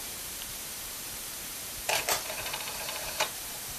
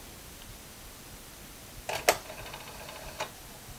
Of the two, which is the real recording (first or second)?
second